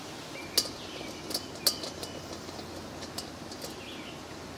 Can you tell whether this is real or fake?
real